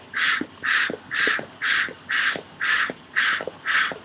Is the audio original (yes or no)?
yes